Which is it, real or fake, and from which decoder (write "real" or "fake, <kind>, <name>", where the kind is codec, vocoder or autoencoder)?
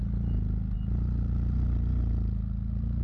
real